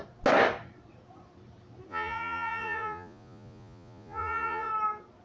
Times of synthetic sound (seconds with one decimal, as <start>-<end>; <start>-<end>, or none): 1.9-4.7